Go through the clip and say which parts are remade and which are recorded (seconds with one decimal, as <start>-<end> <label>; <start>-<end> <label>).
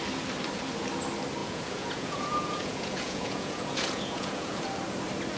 0.0-1.4 recorded; 1.4-4.6 remade; 4.6-5.4 recorded